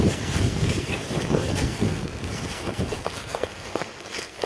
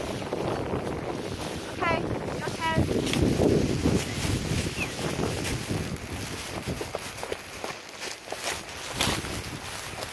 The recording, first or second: second